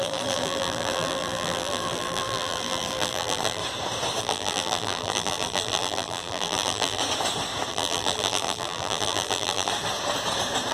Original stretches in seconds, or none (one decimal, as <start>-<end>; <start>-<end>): 3.6-4.2; 7.0-7.7; 9.7-10.7